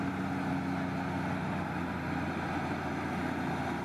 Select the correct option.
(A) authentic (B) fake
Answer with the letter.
A